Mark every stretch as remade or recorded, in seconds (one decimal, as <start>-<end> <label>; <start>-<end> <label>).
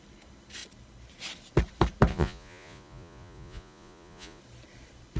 0.0-2.1 recorded; 2.1-4.4 remade; 4.4-5.2 recorded